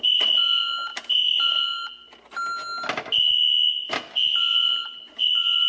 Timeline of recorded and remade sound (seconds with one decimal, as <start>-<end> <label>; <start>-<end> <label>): 0.0-5.7 recorded